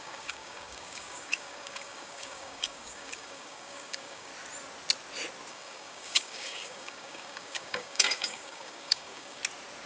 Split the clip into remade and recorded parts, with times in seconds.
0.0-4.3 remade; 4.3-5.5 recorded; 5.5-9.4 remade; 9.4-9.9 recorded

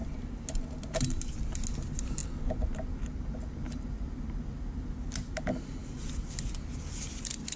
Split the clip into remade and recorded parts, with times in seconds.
0.0-7.6 recorded

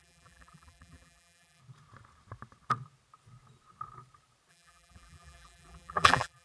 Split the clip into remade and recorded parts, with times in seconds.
0.0-1.6 remade; 1.6-4.5 recorded; 4.5-6.4 remade

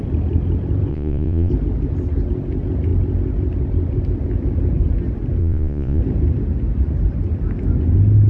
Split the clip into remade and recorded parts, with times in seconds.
0.0-0.9 recorded; 0.9-1.5 remade; 1.5-5.4 recorded; 5.4-6.0 remade; 6.0-8.3 recorded

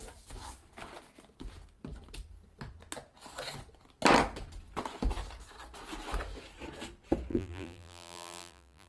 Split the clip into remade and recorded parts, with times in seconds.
0.0-7.3 recorded; 7.3-8.9 remade